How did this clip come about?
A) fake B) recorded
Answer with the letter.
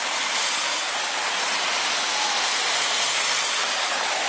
A